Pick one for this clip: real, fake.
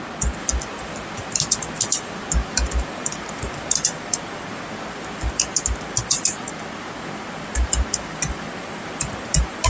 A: real